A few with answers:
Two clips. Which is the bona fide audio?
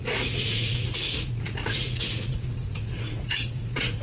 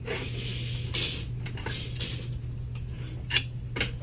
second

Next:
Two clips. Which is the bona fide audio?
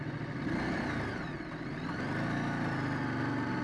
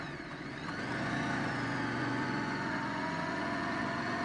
first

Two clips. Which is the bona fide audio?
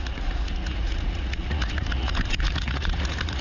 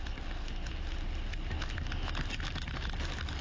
second